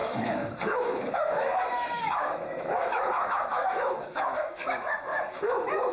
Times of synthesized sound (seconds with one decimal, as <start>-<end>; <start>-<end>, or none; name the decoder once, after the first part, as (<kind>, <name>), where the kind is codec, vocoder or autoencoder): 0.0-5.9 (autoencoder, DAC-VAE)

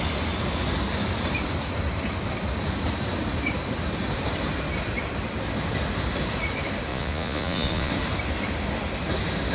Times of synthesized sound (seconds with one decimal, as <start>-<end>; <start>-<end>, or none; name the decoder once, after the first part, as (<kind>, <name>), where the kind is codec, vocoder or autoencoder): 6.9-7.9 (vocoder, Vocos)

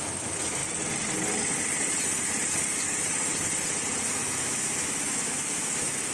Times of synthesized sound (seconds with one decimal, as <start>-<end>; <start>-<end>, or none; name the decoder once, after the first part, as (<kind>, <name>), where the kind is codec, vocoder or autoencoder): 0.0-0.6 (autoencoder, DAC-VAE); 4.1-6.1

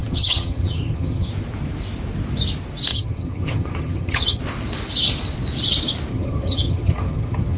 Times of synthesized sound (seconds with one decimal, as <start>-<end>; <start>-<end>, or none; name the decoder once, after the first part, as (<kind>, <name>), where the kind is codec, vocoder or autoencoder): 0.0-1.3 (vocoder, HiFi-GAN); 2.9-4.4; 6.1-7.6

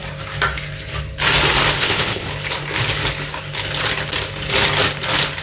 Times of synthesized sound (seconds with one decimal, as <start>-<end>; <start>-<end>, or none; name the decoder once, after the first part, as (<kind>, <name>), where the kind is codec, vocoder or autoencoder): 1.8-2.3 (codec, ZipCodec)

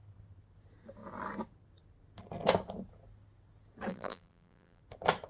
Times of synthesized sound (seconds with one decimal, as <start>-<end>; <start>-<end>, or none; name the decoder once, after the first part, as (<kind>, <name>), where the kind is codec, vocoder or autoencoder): 3.9-4.8 (vocoder, BigVGAN v2)

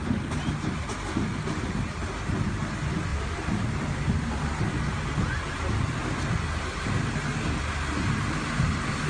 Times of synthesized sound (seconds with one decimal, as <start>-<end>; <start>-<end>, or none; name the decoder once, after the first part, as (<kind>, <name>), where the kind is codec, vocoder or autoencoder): none